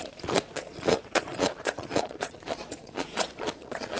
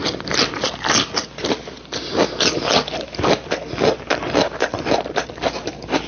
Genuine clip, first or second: second